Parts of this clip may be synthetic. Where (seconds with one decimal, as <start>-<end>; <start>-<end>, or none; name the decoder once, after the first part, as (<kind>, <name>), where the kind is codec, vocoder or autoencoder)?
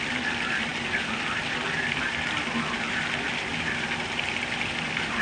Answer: 0.0-3.5 (vocoder, BigVGAN v2); 4.2-5.2